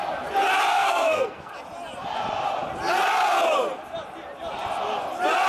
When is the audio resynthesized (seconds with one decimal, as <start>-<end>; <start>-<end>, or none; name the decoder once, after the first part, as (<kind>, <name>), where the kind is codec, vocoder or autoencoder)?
0.7-1.5 (codec, SNAC)